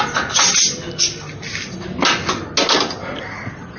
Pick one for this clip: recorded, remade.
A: recorded